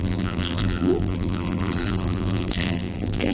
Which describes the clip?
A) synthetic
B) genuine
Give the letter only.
A